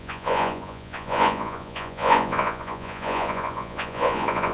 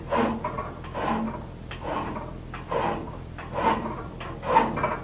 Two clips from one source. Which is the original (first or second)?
second